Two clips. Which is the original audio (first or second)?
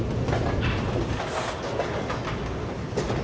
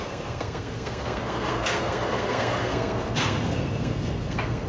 first